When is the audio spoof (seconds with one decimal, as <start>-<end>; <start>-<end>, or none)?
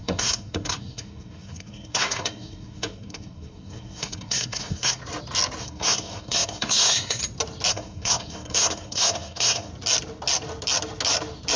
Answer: 0.0-5.0; 5.6-7.2; 7.7-9.7